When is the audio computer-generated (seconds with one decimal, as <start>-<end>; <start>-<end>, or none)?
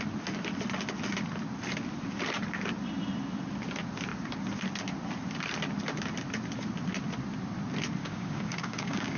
8.0-9.2